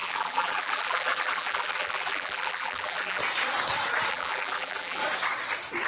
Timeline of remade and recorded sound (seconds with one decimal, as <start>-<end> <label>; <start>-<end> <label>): 0.0-3.2 remade; 3.2-4.1 recorded; 4.1-5.0 remade; 5.0-5.9 recorded